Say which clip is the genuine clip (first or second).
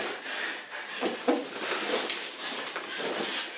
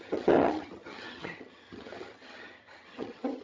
first